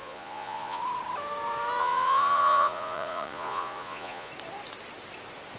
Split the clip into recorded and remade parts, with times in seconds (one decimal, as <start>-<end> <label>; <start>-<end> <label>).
0.0-0.8 remade; 0.8-1.8 recorded; 1.8-4.3 remade; 4.3-5.6 recorded